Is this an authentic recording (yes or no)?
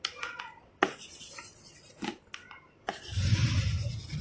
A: yes